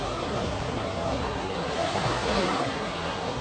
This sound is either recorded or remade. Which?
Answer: remade